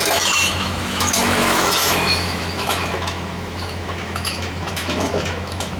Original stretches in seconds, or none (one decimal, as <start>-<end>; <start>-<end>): none